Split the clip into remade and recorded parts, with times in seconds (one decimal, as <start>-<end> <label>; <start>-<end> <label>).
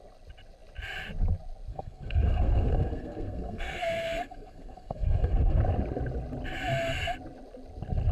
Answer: 0.0-1.7 recorded; 1.7-5.6 remade; 5.6-8.1 recorded